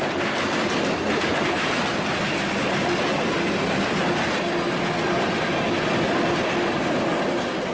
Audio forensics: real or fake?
real